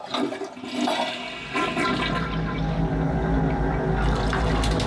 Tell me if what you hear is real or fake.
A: real